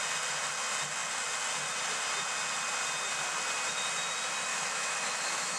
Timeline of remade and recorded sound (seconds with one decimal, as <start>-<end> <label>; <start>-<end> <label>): 0.0-4.5 recorded; 4.5-5.6 remade